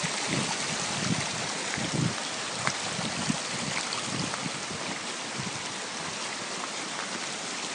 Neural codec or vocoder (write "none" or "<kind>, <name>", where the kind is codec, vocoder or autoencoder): none